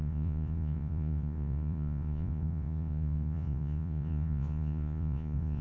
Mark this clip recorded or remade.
remade